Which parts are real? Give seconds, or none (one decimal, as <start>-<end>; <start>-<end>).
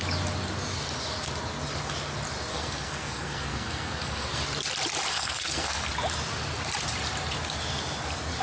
0.0-2.5; 4.4-5.1; 5.9-8.4